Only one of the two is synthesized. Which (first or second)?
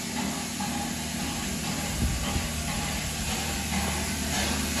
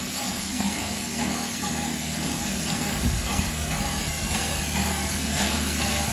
second